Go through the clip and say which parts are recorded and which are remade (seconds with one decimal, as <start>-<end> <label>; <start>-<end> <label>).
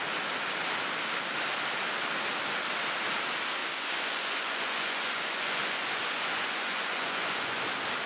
0.0-3.6 recorded; 3.6-7.6 remade; 7.6-8.1 recorded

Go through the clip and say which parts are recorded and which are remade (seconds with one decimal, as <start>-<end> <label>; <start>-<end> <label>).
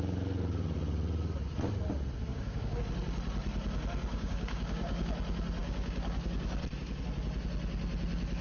0.0-2.3 recorded; 2.3-2.8 remade; 2.8-4.1 recorded; 4.1-5.1 remade; 5.1-5.6 recorded; 5.6-6.2 remade; 6.2-8.4 recorded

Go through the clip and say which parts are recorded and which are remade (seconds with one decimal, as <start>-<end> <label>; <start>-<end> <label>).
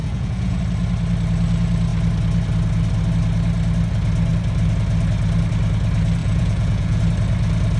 0.0-0.6 remade; 0.6-6.2 recorded; 6.2-7.0 remade; 7.0-7.8 recorded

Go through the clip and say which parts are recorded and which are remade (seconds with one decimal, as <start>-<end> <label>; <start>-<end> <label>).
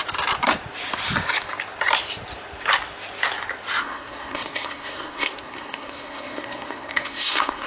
0.0-3.8 recorded; 3.8-7.7 remade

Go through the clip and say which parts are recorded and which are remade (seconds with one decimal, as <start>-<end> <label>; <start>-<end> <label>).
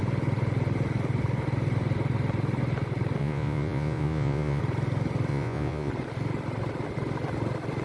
0.0-3.2 recorded; 3.2-4.6 remade; 4.6-5.3 recorded; 5.3-5.9 remade; 5.9-7.8 recorded